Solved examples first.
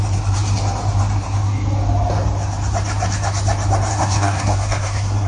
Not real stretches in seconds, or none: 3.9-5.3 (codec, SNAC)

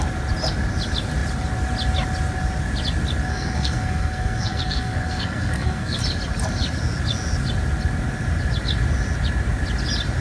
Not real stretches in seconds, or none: 3.3-6.0 (codec, SNAC)

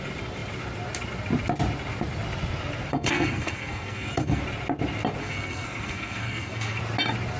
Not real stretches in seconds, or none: 2.9-4.4 (codec, SNAC); 5.2-6.8